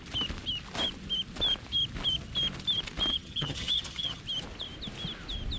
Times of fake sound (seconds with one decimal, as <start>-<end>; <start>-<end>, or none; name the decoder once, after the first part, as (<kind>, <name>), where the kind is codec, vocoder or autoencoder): 3.1-4.2 (vocoder, HiFi-GAN)